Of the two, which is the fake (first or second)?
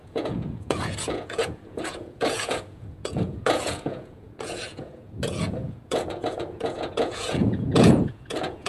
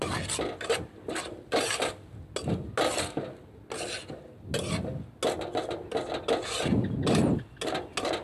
first